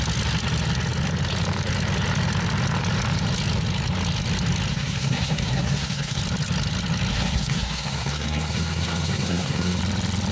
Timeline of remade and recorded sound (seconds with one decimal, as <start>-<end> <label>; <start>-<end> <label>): 0.0-4.7 recorded; 4.7-6.2 remade; 6.2-7.1 recorded; 7.1-9.8 remade; 9.8-10.3 recorded